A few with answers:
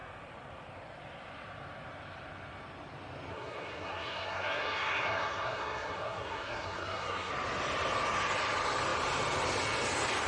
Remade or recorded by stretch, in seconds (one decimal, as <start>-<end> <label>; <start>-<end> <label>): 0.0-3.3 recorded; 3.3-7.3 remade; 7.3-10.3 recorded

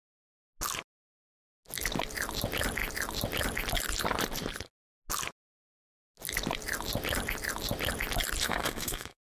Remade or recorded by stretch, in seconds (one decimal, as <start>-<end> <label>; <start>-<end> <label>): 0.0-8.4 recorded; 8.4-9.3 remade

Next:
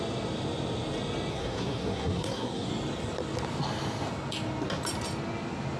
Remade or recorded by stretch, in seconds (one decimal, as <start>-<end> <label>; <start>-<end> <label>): 0.0-1.3 recorded; 1.3-2.7 remade; 2.7-5.8 recorded